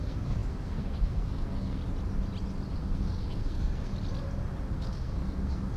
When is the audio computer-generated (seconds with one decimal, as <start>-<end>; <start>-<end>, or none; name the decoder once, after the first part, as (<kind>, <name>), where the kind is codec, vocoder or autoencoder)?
0.0-1.8 (codec, SNAC); 2.8-3.9; 4.7-5.8